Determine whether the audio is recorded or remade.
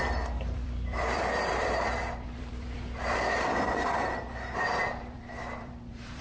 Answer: remade